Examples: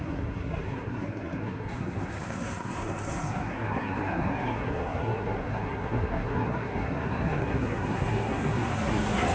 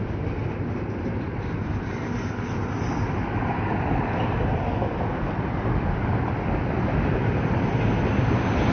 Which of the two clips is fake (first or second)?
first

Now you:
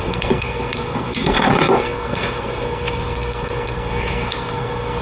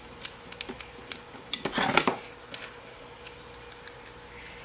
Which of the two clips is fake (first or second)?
first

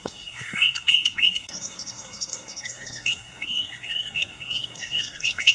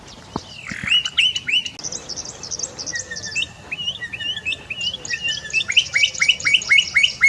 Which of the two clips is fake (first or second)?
first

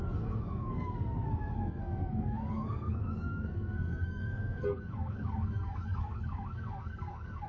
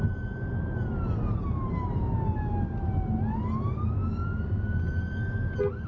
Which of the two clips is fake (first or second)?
first